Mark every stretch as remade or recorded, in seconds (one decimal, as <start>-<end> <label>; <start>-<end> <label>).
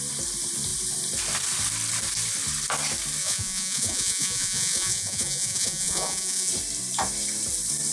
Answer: 0.0-3.2 recorded; 3.2-6.5 remade; 6.5-7.9 recorded